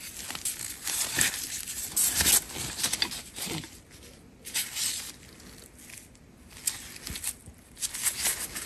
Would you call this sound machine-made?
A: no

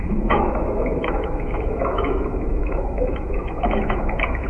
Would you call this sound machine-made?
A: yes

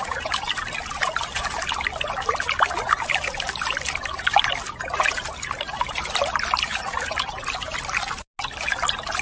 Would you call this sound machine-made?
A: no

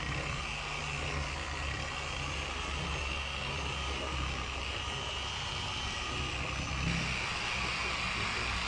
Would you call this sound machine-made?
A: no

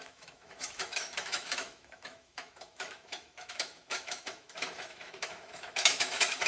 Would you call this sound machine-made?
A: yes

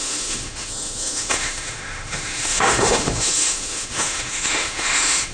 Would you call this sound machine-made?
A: yes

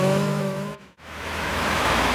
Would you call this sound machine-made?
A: yes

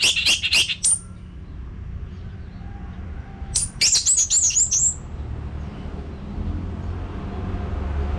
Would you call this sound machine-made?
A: no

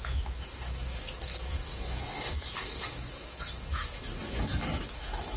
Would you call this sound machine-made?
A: yes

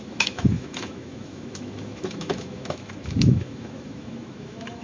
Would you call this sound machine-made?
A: yes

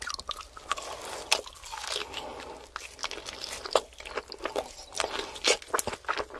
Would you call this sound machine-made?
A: no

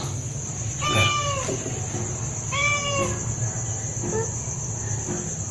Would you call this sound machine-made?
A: no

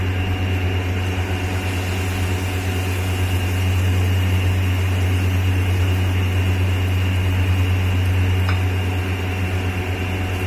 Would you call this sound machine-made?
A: no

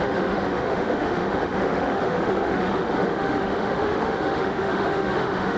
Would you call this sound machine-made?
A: yes